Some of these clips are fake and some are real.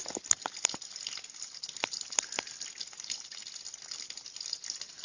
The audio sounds real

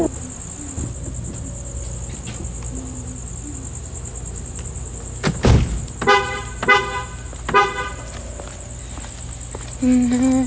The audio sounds real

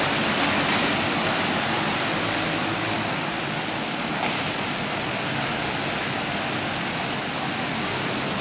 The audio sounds real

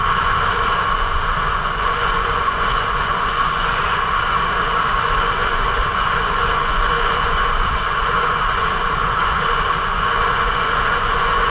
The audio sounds fake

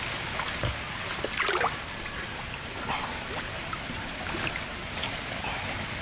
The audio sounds real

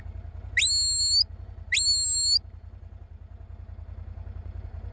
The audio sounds real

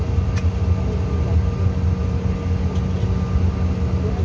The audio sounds real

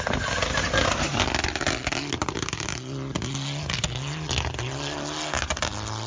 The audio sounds real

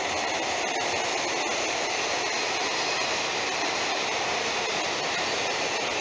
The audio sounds real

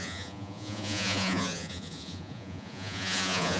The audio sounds fake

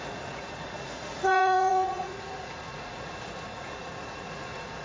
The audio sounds fake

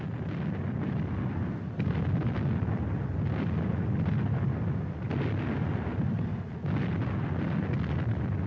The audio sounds real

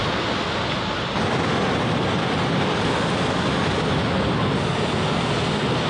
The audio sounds real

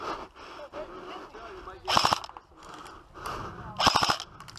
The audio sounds real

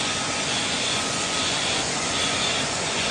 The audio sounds fake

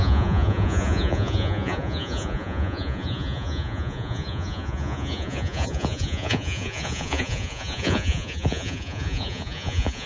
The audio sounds fake